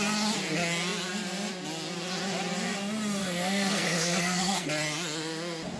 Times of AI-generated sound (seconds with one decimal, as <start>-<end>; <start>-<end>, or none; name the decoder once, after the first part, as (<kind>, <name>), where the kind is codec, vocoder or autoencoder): 3.2-4.7 (codec, SNAC)